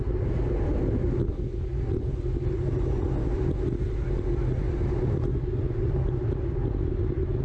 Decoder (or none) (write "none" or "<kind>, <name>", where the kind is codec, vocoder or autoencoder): none